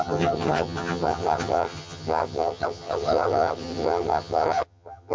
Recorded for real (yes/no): no